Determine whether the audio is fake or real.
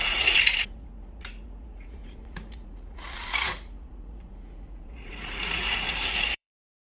fake